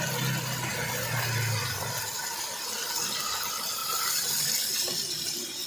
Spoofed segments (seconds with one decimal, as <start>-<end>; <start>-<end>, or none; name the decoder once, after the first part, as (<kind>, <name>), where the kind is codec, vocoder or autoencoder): none